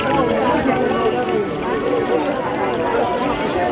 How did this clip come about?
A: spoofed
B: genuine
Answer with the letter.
B